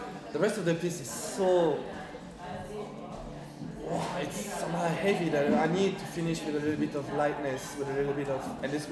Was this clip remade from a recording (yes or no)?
no